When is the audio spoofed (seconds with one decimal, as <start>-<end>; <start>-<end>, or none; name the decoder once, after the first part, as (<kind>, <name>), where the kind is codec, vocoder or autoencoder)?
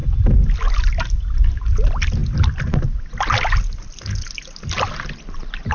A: none